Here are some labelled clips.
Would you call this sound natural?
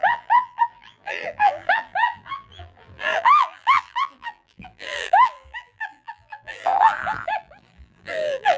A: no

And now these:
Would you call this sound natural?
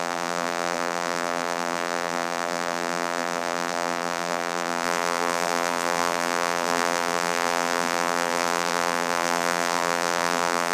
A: no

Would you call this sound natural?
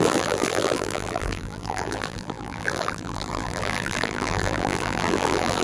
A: no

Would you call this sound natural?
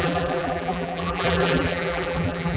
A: no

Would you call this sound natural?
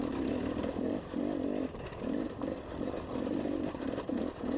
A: no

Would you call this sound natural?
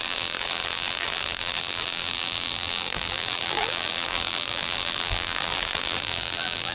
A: no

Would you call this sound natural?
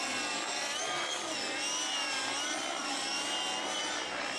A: yes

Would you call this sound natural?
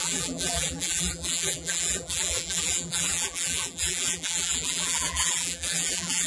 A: no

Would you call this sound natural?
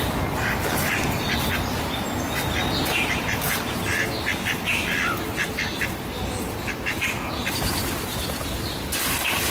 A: yes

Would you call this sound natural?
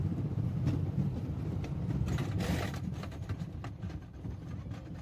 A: no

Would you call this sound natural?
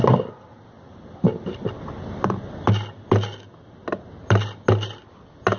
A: yes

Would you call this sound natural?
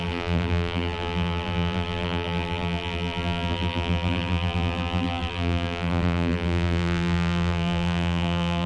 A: no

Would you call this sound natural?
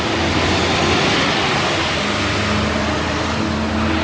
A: yes